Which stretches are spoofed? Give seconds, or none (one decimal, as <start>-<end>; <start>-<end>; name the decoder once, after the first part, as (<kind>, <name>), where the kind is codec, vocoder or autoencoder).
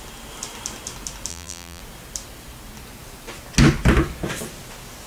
1.3-1.8 (vocoder, BigVGAN v2)